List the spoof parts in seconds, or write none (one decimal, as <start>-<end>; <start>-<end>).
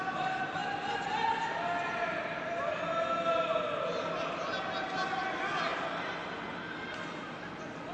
none